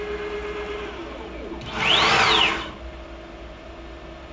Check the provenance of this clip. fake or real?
real